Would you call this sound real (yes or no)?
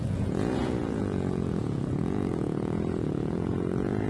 no